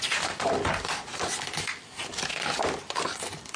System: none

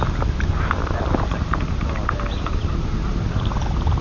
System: none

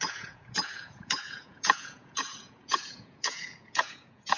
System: vocoder, Vocos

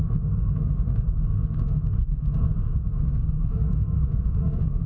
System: autoencoder, DAC-VAE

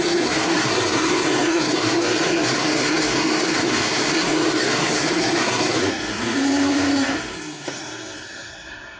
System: codec, SNAC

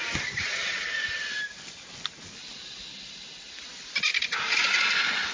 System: none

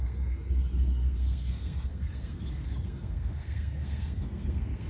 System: codec, SNAC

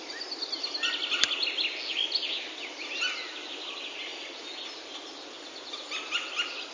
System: none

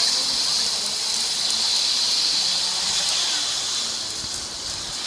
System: none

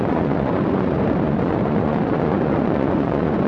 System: vocoder, Vocos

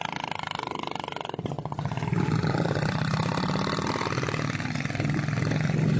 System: none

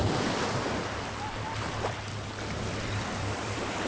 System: vocoder, BigVGAN v2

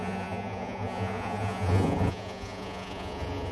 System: vocoder, Vocos